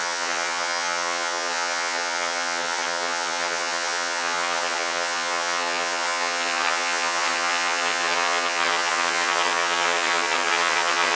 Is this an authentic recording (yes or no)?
no